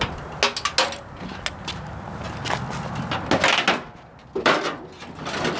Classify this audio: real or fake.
real